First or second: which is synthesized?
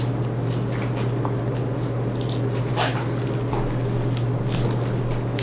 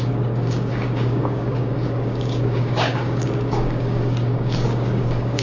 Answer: second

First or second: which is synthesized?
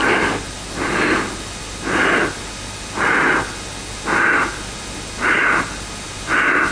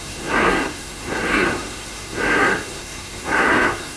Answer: second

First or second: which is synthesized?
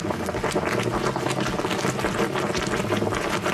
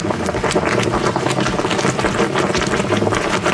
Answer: second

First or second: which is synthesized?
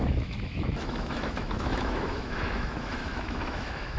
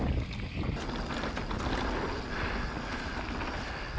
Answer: first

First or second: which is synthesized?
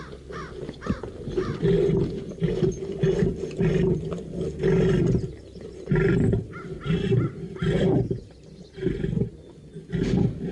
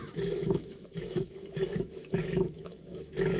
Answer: second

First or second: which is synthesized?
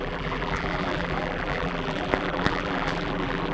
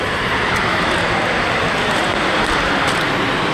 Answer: first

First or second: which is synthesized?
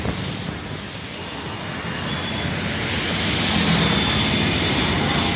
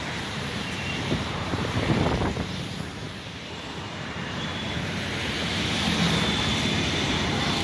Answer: second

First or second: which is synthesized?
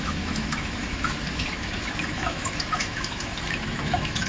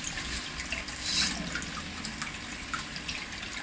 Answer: first